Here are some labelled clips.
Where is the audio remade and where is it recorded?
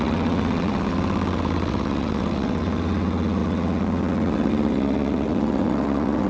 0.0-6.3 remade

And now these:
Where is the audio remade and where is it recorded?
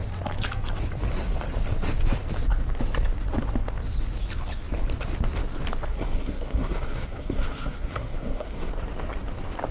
0.0-5.9 recorded; 5.9-8.7 remade; 8.7-9.7 recorded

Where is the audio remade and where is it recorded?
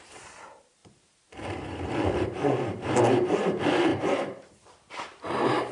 0.0-5.7 remade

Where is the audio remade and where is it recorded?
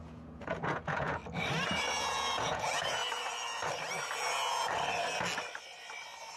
0.0-1.2 remade; 1.2-1.9 recorded; 1.9-3.0 remade; 3.0-6.4 recorded